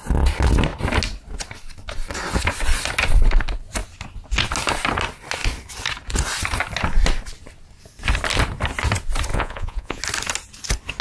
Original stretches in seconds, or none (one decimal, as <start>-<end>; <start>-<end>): 0.0-9.3; 10.0-11.0